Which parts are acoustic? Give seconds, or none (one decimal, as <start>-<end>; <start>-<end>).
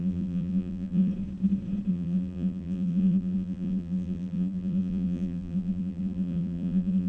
1.1-1.9